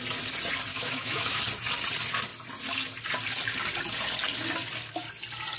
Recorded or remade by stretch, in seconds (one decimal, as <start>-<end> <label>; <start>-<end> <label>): 0.0-0.7 recorded; 0.7-1.4 remade; 1.4-5.6 recorded